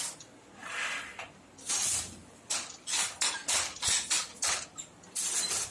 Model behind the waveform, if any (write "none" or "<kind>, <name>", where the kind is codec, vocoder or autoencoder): none